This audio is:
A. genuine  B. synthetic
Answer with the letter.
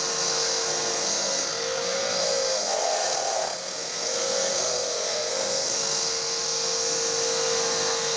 B